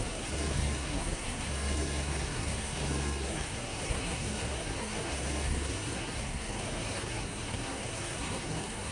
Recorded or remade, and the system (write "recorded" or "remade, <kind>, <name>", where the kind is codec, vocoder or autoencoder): remade, codec, SNAC